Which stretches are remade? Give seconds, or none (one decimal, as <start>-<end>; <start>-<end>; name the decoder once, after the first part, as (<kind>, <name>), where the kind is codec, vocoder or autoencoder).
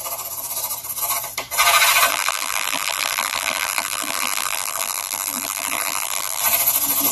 2.1-6.4 (vocoder, BigVGAN v2)